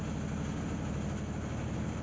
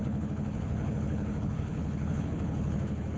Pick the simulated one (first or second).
second